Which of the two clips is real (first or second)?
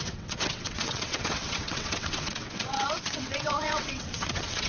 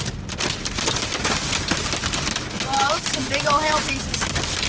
second